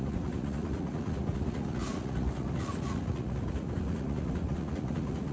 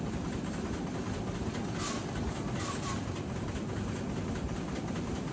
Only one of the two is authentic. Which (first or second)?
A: second